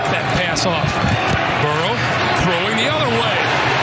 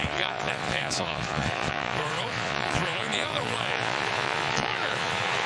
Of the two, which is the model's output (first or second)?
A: second